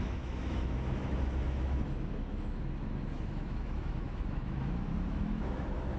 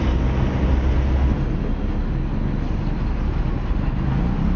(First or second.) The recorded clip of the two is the second